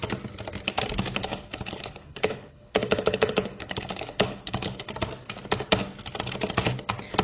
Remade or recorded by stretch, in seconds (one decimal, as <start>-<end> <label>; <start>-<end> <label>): 0.0-1.2 recorded; 1.2-4.9 remade; 4.9-7.2 recorded